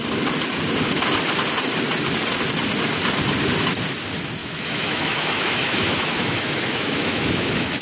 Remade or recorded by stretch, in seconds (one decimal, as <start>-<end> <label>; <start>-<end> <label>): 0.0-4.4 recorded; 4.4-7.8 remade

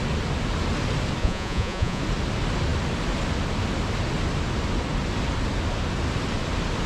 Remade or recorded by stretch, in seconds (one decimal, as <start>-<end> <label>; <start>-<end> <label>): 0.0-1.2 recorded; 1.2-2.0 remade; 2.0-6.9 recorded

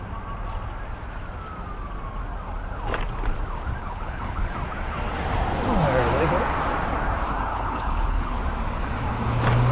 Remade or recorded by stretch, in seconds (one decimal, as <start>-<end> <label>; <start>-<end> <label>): 0.0-3.8 recorded; 3.8-4.5 remade; 4.5-7.5 recorded; 7.5-8.4 remade; 8.4-9.7 recorded